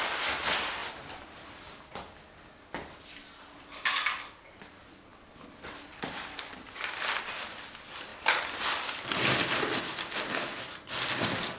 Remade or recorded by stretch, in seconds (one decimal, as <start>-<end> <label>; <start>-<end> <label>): 0.0-11.6 recorded